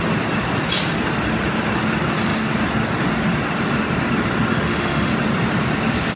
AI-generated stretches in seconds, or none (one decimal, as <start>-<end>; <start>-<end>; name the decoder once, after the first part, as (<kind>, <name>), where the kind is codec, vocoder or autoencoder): 4.5-5.1 (autoencoder, DAC-VAE)